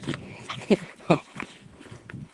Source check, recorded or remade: remade